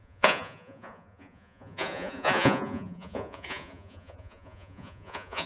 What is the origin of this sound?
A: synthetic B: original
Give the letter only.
A